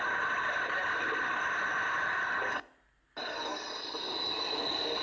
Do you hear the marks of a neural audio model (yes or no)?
no